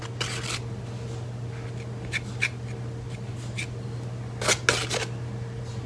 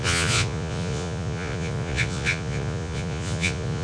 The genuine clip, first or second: first